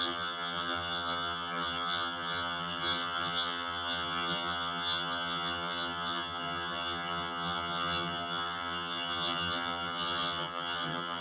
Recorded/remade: remade